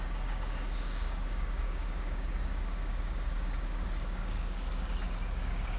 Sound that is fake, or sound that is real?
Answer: fake